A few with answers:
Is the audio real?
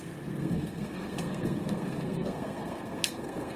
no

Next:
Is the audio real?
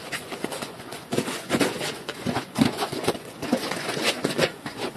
no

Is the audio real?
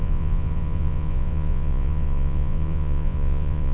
no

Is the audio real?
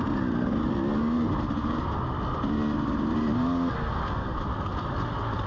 yes